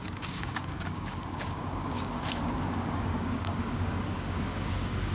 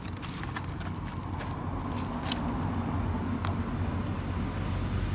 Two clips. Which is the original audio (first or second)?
second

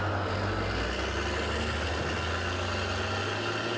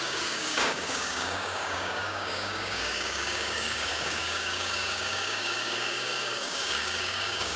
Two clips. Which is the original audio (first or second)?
first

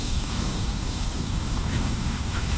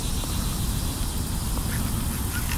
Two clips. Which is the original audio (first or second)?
second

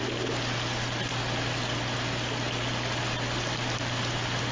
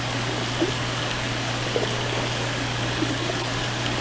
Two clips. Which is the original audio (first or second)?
first